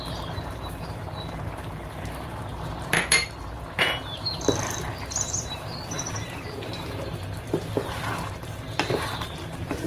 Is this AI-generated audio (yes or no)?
yes